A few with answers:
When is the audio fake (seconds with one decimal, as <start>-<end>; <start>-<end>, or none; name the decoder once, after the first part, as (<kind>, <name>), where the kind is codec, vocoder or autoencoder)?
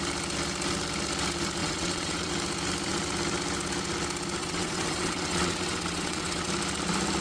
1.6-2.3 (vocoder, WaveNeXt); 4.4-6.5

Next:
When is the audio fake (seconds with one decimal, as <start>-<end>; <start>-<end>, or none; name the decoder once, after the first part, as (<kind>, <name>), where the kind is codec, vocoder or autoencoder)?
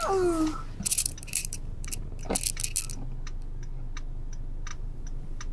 0.9-2.1 (vocoder, BigVGAN v2); 4.7-5.5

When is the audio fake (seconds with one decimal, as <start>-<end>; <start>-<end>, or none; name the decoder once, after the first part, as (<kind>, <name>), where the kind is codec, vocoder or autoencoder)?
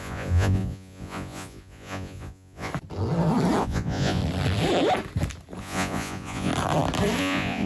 0.0-2.7 (vocoder, Vocos); 3.6-4.2; 5.6-6.5; 7.2-7.7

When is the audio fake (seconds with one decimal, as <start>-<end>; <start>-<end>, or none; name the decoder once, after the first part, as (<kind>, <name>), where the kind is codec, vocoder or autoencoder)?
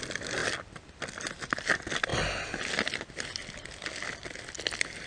none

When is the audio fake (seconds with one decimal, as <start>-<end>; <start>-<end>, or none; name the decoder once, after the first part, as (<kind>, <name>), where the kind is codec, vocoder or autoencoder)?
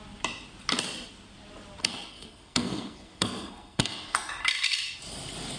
1.8-4.3 (codec, SNAC)